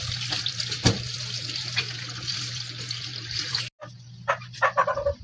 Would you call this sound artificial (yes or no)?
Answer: no